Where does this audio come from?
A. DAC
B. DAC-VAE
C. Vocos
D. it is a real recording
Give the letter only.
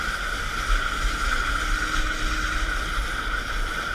D